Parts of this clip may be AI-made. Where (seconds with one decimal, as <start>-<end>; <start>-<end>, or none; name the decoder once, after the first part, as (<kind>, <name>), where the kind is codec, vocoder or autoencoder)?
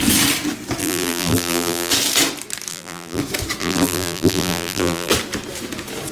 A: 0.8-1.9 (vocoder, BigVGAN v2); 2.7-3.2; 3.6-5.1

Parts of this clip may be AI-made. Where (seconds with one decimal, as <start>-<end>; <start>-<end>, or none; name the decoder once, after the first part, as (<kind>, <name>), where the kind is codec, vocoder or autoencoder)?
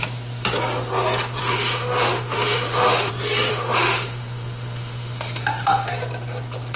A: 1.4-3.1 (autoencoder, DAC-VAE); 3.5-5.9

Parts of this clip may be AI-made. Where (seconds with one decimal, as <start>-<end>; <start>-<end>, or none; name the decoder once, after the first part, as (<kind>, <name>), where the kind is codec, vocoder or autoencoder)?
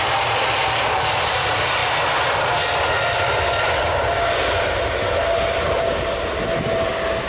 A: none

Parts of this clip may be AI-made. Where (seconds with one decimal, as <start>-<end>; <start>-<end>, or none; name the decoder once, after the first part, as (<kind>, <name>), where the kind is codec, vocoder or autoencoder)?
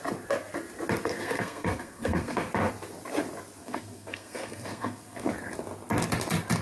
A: 1.0-2.5 (codec, SNAC); 3.6-5.3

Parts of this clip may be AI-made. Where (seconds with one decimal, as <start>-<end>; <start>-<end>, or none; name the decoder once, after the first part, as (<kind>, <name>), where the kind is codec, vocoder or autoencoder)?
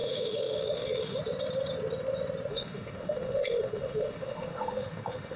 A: 0.0-1.2 (autoencoder, DAC-VAE); 2.5-5.4